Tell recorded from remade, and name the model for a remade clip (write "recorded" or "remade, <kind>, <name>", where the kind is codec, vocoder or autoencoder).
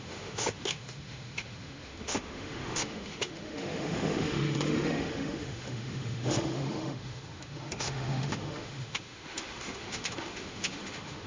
remade, autoencoder, DAC-VAE